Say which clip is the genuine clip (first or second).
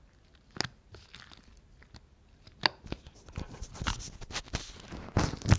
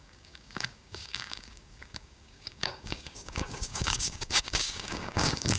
first